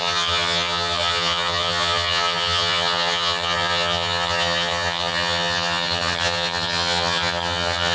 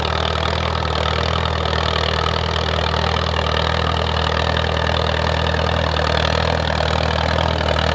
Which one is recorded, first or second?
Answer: second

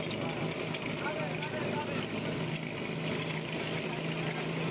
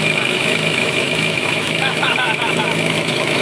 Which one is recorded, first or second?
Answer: first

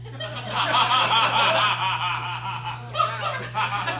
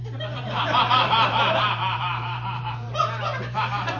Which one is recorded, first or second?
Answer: first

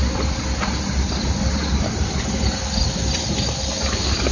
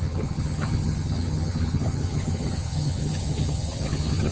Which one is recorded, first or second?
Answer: first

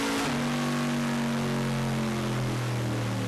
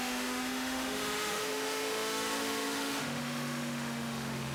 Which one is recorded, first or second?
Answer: first